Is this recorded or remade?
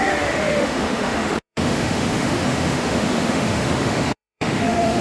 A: remade